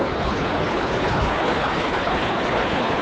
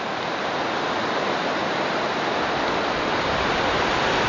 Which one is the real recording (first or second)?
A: second